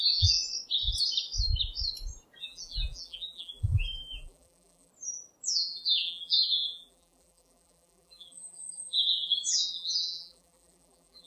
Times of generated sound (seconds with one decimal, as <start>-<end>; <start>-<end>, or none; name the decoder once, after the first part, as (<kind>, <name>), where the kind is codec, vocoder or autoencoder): 0.0-0.4 (vocoder, BigVGAN v2); 2.4-4.9; 5.5-11.3